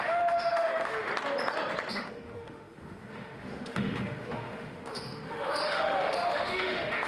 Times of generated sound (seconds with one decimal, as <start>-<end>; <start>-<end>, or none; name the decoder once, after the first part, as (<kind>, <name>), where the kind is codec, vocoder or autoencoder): 0.0-1.1 (autoencoder, DAC-VAE); 1.9-7.1